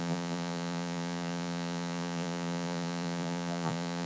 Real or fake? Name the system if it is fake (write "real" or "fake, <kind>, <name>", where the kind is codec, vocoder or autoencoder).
fake, vocoder, Vocos